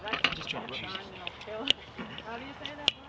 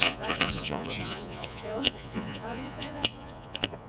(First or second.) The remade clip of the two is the second